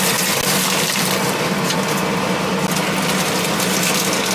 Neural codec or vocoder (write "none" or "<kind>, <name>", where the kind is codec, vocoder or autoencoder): none